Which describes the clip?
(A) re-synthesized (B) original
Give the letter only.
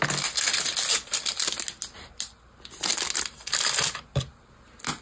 B